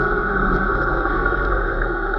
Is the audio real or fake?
fake